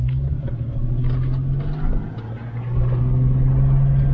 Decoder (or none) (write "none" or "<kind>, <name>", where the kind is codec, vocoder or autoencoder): none